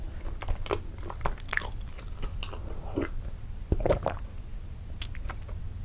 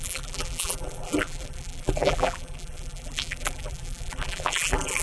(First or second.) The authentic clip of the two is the first